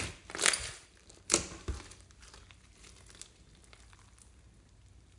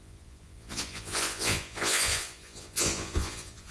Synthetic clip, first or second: second